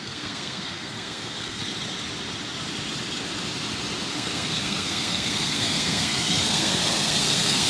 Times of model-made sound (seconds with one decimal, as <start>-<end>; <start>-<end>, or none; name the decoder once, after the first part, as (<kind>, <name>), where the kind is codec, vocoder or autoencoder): 0.0-1.6 (codec, SNAC); 4.1-7.7